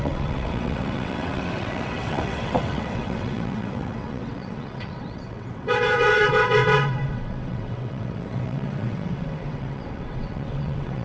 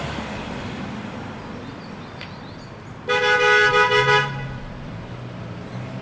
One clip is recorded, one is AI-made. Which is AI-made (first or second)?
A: first